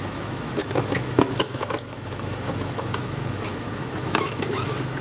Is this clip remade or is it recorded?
remade